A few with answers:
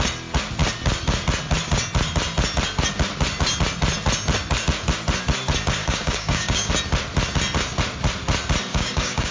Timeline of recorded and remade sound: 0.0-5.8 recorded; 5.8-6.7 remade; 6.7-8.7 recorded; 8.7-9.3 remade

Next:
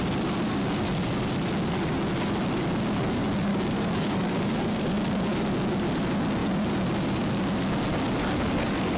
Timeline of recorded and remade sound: 0.0-3.5 recorded; 3.5-5.2 remade; 5.2-8.2 recorded; 8.2-9.0 remade